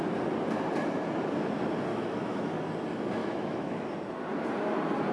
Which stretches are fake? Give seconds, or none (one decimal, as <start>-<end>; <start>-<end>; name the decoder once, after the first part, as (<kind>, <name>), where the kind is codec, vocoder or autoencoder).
1.9-2.4 (autoencoder, DAC-VAE); 3.2-3.9